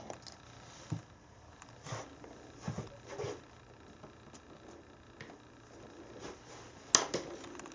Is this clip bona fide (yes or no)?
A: yes